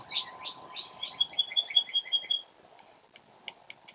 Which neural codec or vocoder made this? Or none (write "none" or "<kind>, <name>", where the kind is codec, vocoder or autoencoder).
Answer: none